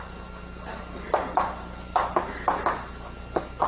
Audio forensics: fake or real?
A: real